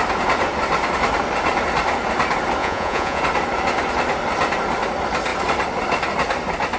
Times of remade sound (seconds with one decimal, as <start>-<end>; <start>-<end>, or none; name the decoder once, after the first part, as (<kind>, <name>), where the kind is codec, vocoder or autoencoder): 2.6-3.2 (vocoder, Vocos)